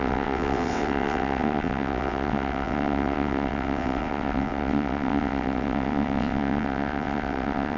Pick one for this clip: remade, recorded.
remade